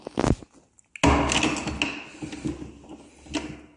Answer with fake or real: real